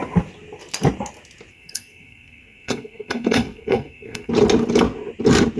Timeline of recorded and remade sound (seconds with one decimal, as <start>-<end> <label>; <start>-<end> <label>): 0.0-1.5 recorded; 1.5-4.3 remade; 4.3-5.6 recorded